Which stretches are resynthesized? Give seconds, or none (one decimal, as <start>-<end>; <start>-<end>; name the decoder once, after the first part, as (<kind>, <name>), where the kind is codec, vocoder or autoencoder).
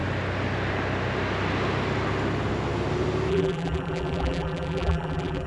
3.3-5.5 (vocoder, BigVGAN v2)